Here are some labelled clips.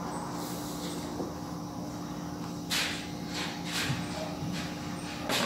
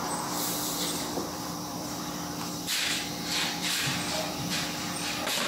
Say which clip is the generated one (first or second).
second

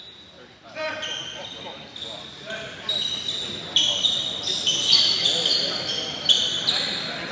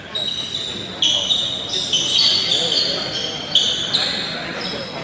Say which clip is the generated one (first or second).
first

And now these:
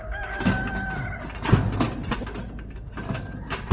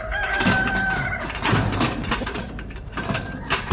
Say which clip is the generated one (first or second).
second